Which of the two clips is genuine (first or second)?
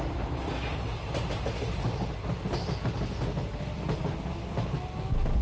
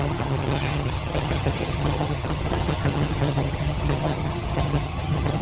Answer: first